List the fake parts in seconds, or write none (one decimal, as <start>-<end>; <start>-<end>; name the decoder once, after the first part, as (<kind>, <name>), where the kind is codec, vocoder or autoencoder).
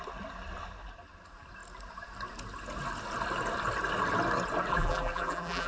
4.7-5.7 (vocoder, BigVGAN v2)